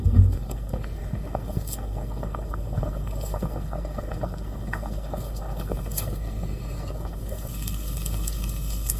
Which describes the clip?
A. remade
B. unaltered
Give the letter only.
A